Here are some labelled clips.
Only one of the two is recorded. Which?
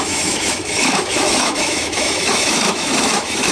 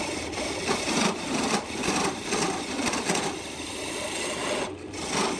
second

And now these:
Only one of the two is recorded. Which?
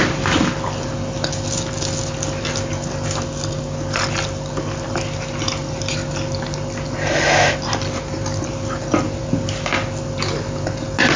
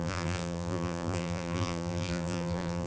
first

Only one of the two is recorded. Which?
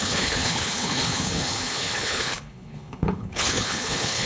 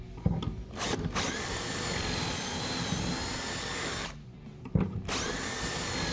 second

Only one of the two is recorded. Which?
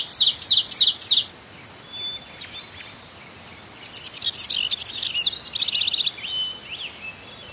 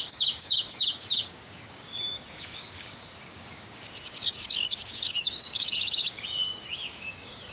first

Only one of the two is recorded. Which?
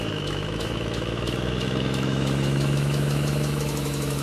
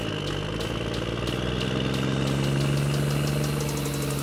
second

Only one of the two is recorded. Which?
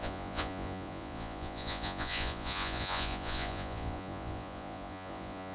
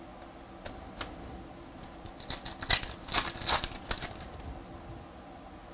second